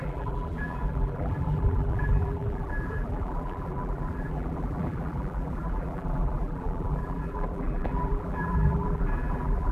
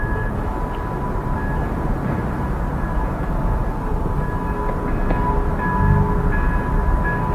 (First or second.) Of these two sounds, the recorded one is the second